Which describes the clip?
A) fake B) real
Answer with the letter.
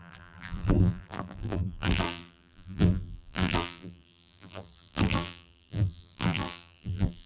A